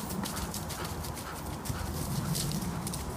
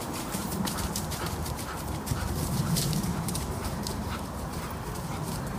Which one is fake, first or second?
second